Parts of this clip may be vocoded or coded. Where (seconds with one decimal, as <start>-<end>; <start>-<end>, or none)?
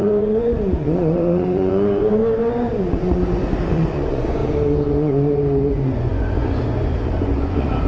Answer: 0.0-2.2; 2.8-4.4; 4.9-7.9